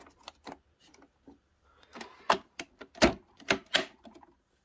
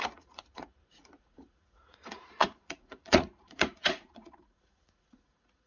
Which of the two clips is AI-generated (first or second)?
second